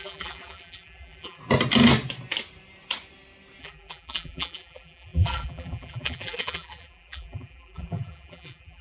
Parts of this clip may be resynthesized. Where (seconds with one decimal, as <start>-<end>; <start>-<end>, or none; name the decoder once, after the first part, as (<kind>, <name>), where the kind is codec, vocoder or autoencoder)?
0.0-1.4 (vocoder, BigVGAN v2); 3.6-8.8